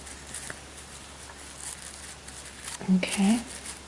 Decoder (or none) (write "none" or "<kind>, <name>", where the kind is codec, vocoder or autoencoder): none